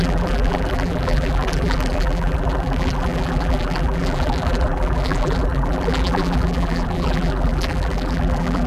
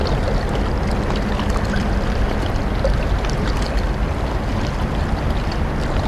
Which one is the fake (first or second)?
first